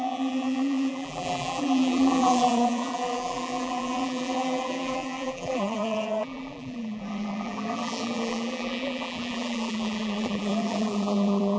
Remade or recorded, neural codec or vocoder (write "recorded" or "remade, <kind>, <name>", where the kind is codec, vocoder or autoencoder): remade, vocoder, BigVGAN v2